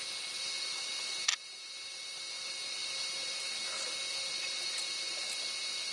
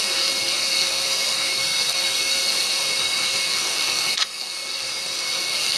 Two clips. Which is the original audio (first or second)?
first